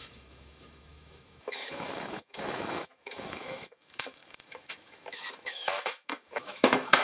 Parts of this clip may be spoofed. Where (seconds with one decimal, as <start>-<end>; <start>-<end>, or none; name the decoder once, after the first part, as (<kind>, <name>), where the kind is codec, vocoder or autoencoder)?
0.0-7.0 (autoencoder, DAC-VAE)